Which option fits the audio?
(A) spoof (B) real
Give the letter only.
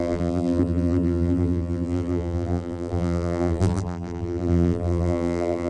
A